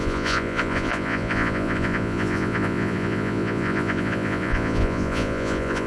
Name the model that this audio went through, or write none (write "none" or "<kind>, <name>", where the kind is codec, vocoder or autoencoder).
vocoder, Vocos